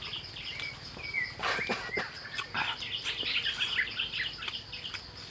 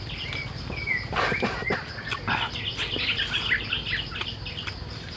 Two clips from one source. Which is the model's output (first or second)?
second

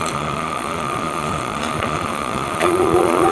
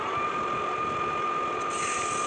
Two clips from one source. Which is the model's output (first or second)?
first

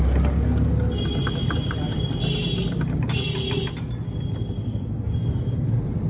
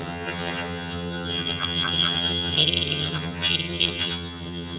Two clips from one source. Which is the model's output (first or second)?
second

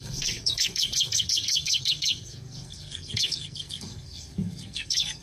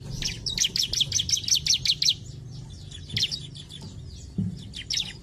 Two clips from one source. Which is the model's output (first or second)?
first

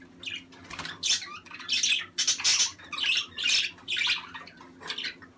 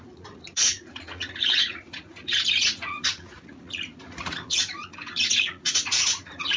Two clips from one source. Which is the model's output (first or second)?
second